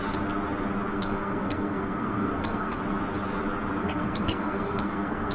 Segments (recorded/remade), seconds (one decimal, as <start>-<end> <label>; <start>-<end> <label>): 0.0-0.9 recorded; 0.9-2.8 remade; 2.8-3.8 recorded; 3.8-5.3 remade

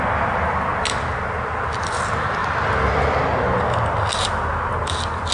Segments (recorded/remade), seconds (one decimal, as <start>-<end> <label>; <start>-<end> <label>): 0.0-5.3 recorded

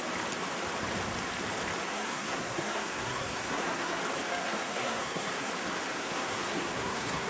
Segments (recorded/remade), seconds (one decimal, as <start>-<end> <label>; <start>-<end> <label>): 0.0-1.9 recorded; 1.9-4.0 remade; 4.0-4.4 recorded; 4.4-5.5 remade; 5.5-5.9 recorded; 5.9-7.3 remade

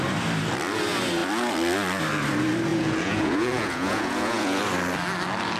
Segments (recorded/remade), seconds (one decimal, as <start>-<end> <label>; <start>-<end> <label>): 0.0-2.7 recorded; 2.7-4.6 remade; 4.6-5.6 recorded

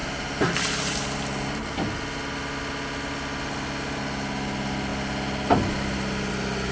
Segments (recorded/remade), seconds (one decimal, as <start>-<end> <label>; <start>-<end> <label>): 0.0-6.7 recorded